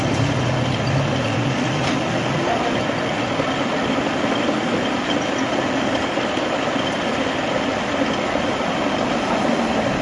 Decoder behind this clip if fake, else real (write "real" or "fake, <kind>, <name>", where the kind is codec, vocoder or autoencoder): real